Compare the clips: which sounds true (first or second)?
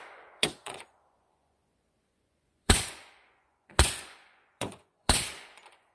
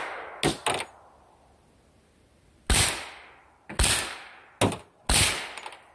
second